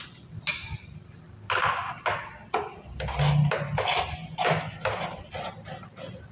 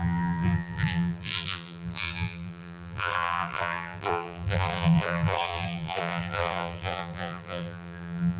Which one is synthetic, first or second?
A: second